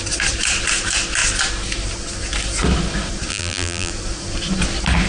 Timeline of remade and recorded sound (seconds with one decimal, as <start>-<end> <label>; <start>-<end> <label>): 0.0-3.3 recorded; 3.3-3.9 remade; 3.9-5.1 recorded